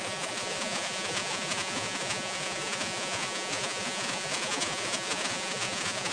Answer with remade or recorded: remade